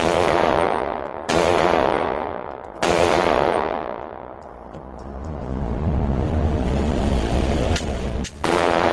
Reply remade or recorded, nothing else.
remade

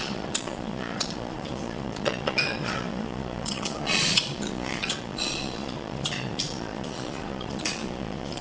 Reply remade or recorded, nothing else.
remade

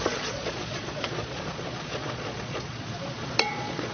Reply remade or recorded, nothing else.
remade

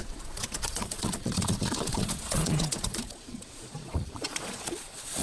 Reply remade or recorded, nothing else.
remade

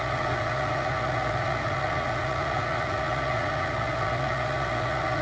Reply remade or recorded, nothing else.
remade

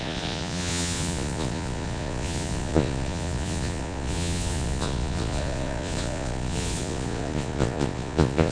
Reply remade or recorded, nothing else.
remade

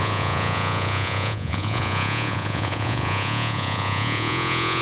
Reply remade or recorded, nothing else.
remade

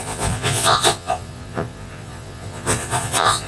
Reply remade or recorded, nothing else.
remade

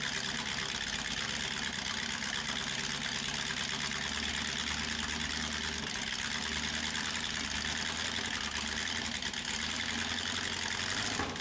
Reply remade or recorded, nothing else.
recorded